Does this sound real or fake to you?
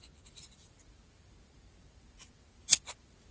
fake